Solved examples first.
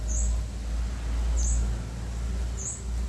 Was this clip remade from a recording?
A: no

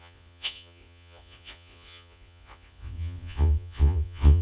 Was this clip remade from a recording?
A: yes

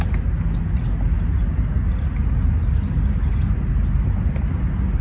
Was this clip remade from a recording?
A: no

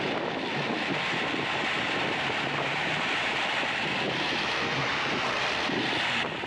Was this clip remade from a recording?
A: yes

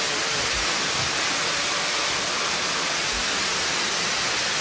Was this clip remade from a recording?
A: no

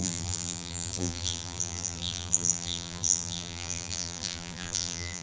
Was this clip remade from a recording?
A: yes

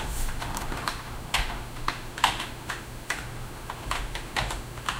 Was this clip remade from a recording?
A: yes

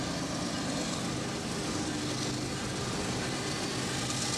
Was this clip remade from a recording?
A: no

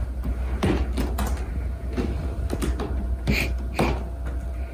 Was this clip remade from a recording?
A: no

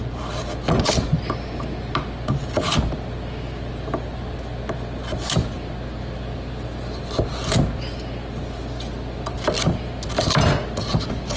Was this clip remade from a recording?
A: no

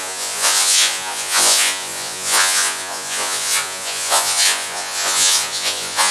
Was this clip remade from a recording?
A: yes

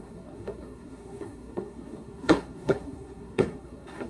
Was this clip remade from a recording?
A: yes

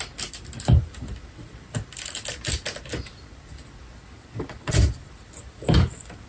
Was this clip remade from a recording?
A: no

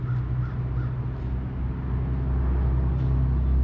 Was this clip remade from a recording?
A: no